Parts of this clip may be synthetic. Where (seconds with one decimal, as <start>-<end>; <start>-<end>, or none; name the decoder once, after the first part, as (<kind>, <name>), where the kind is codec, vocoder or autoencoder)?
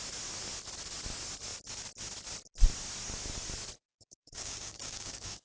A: 3.9-5.4 (codec, DAC)